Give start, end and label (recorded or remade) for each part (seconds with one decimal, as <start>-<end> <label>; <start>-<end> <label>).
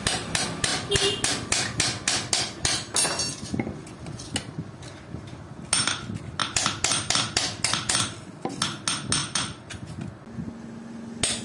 0.0-3.8 recorded; 3.8-4.3 remade; 4.3-9.2 recorded; 9.2-9.9 remade; 9.9-11.4 recorded